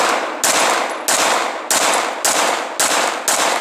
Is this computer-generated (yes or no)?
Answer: no